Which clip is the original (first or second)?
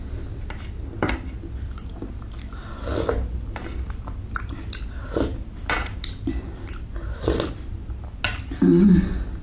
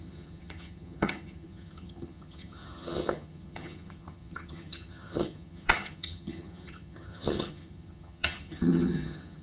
first